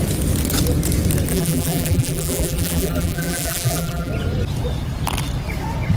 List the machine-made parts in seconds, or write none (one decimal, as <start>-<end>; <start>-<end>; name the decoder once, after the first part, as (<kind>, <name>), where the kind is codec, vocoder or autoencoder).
1.3-4.1 (vocoder, BigVGAN v2)